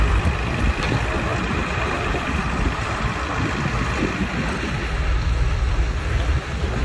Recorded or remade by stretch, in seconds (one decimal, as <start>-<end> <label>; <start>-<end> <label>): 0.0-1.3 recorded; 1.3-3.1 remade; 3.1-6.8 recorded